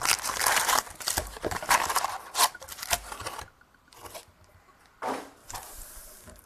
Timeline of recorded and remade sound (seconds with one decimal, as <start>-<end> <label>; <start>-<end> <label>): 0.0-0.4 recorded; 0.4-1.9 remade; 1.9-5.4 recorded; 5.4-6.5 remade